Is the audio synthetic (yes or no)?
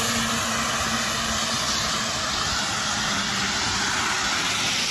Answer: no